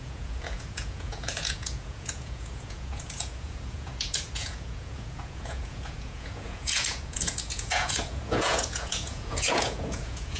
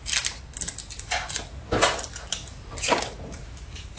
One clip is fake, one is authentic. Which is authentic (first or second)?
second